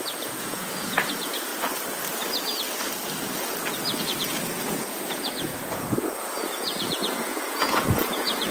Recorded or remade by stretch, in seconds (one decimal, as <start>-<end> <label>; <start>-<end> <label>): 0.0-1.5 remade; 1.5-4.0 recorded; 4.0-8.5 remade